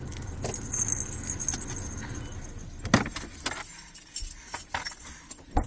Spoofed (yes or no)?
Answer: no